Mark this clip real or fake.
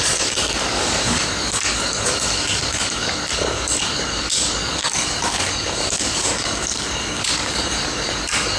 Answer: fake